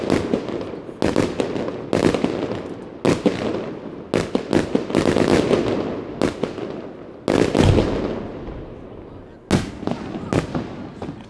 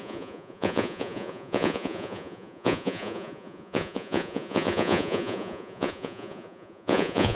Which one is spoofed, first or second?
second